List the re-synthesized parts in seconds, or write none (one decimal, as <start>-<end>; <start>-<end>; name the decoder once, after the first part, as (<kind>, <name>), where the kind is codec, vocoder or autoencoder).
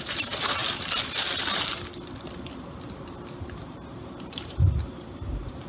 0.0-0.6 (vocoder, BigVGAN v2); 4.0-5.7